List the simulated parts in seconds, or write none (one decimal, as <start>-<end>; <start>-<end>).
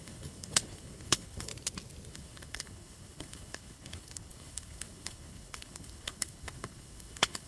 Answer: 0.0-1.5; 2.1-7.5